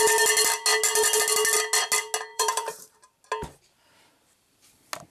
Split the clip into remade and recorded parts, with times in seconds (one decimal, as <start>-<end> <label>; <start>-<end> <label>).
0.0-2.3 recorded; 2.3-3.2 remade; 3.2-5.1 recorded